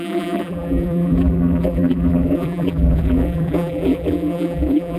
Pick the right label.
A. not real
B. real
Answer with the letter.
A